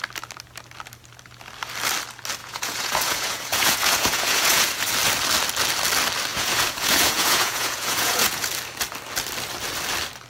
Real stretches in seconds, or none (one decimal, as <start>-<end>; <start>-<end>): 0.0-2.4; 4.8-6.3; 8.5-10.3